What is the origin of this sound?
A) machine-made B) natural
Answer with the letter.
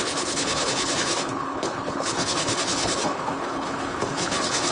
A